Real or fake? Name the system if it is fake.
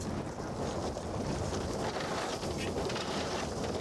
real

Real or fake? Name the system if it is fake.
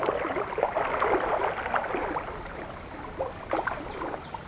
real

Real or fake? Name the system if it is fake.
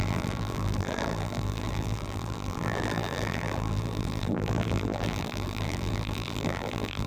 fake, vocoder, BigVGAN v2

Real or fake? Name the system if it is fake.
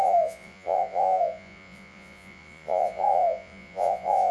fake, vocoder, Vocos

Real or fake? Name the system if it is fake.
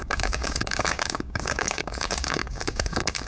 fake, codec, DAC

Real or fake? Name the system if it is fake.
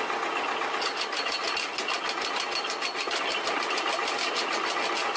real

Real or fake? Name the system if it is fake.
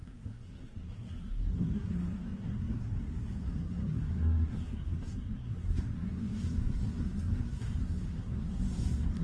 fake, codec, SNAC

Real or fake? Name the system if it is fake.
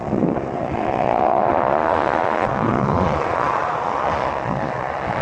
fake, vocoder, Vocos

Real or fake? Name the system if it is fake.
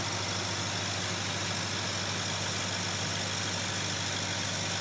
real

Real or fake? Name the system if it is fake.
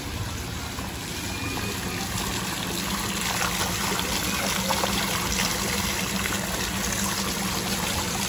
real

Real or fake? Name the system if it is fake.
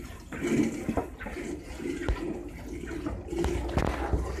real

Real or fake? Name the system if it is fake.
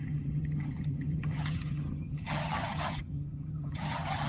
fake, vocoder, HiFi-GAN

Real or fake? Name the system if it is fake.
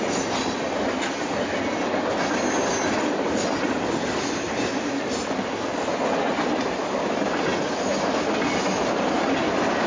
real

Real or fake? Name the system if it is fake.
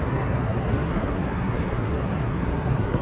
fake, codec, SNAC